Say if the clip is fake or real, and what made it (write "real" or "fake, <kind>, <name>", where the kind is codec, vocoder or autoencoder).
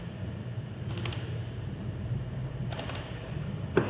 fake, vocoder, BigVGAN v2